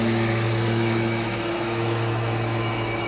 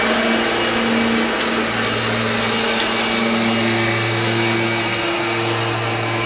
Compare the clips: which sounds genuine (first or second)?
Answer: second